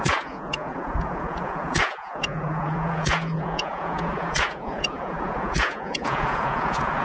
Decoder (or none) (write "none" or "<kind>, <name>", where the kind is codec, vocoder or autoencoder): vocoder, Vocos